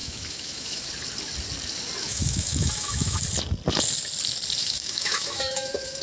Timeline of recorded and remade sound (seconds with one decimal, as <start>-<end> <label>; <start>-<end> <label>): 0.0-0.9 remade; 0.9-2.0 recorded; 2.0-3.2 remade; 3.2-4.6 recorded; 4.6-6.0 remade